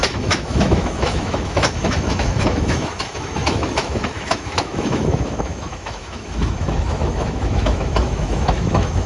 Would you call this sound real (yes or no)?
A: no